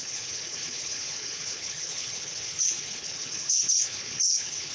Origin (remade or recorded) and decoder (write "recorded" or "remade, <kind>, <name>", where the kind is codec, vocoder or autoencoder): remade, codec, HILCodec